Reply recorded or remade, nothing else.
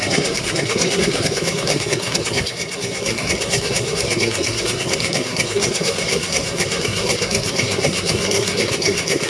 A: remade